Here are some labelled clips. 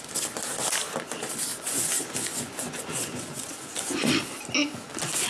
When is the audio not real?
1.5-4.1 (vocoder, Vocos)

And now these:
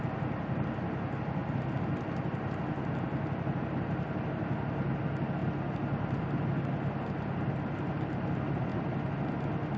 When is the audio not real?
none

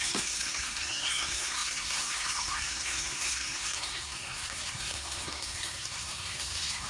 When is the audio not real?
0.0-6.9 (codec, SNAC)